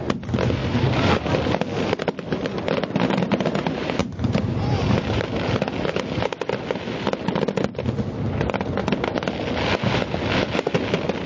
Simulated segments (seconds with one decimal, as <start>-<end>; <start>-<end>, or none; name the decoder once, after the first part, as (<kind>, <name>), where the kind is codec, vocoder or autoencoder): 0.6-1.2 (vocoder, BigVGAN v2); 4.0-5.5